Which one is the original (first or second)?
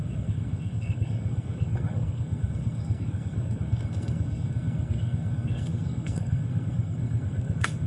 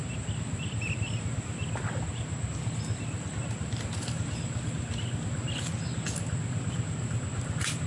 second